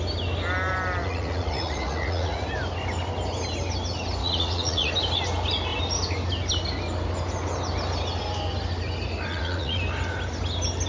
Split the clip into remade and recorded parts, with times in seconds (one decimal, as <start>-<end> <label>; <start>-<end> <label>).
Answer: 0.0-1.0 recorded; 1.0-2.5 remade; 2.5-4.2 recorded; 4.2-4.9 remade; 4.9-9.3 recorded; 9.3-9.8 remade; 9.8-10.9 recorded